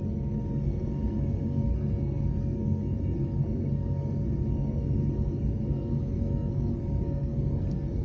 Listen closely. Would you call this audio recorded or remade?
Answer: remade